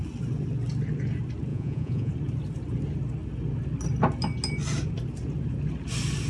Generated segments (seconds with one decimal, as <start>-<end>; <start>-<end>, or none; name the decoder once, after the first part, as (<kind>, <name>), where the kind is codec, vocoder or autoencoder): 1.5-2.1 (vocoder, Vocos)